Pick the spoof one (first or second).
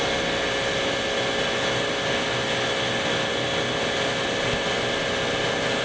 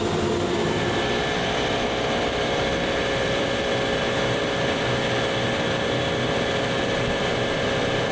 second